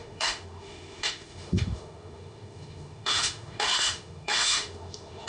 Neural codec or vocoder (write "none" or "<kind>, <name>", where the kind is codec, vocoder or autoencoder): autoencoder, DAC-VAE